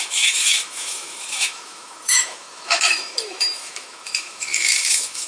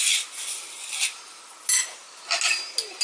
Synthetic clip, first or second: first